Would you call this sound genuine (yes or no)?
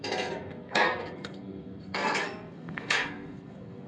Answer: no